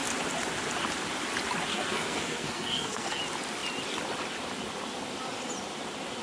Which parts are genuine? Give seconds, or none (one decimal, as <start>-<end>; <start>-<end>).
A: 0.0-1.7; 3.2-6.2